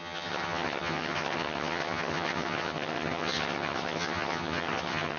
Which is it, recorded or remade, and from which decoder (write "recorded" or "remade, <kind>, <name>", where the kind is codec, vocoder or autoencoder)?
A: remade, vocoder, HiFi-GAN